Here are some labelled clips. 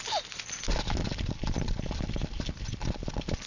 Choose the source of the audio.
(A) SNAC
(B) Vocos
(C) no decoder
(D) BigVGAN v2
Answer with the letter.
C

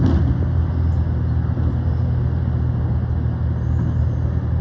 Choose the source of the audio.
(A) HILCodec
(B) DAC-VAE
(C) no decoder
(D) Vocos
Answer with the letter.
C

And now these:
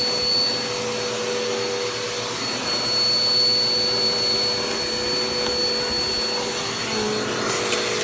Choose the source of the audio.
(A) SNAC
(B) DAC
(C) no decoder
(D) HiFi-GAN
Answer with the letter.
C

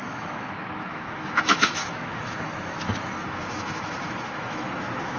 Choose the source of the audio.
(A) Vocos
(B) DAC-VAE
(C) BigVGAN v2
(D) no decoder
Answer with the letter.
B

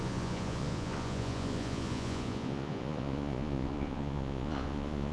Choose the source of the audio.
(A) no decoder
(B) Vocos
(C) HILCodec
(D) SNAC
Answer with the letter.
B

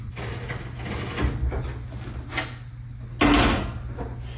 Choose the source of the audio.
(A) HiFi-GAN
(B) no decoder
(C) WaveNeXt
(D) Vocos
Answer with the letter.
B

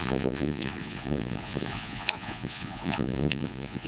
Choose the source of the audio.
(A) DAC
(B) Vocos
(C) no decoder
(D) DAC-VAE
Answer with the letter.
B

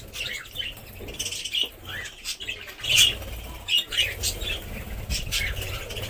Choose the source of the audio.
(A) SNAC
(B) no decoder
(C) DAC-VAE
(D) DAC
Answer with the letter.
B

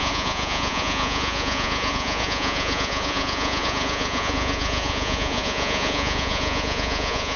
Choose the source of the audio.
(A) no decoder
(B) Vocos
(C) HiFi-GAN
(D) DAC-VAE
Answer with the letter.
B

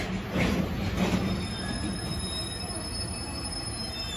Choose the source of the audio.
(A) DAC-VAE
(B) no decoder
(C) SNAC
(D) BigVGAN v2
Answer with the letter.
B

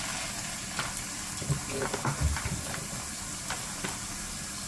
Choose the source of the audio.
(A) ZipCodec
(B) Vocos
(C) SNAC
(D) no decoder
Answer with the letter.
D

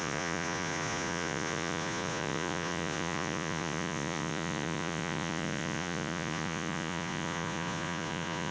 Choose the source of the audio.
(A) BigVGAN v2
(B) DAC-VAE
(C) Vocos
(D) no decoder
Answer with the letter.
C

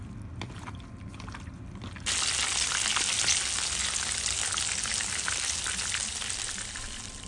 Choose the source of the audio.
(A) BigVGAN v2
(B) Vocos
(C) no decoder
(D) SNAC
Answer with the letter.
C